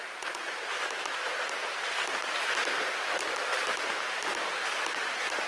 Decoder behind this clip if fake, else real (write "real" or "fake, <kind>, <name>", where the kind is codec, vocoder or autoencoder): real